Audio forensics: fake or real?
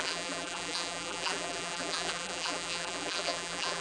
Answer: fake